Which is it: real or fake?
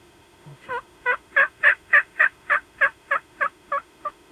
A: fake